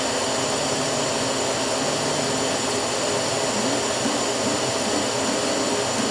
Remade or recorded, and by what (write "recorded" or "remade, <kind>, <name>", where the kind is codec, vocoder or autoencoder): recorded